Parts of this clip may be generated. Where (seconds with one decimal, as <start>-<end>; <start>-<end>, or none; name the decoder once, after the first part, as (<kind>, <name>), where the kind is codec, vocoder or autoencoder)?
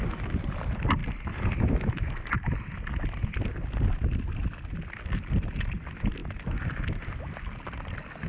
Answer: none